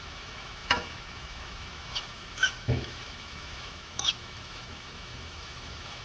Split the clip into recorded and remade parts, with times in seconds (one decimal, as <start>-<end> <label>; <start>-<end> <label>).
0.0-6.0 remade